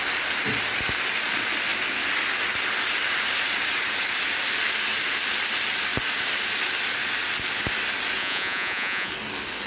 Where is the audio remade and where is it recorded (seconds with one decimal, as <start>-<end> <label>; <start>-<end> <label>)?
0.0-8.2 recorded; 8.2-9.1 remade; 9.1-9.7 recorded